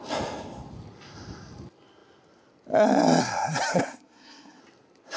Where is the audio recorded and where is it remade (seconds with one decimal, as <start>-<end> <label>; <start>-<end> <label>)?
0.0-3.7 recorded; 3.7-4.6 remade; 4.6-5.2 recorded